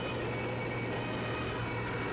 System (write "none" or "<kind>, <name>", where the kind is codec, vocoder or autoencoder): none